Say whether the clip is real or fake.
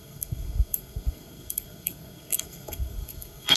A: fake